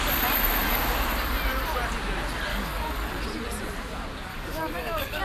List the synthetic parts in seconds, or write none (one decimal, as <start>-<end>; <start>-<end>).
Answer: 2.5-3.2; 4.3-5.2